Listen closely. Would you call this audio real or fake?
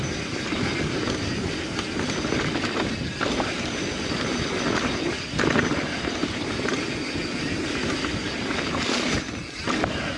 real